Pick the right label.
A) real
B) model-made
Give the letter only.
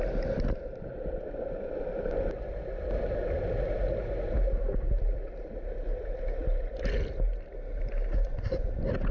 A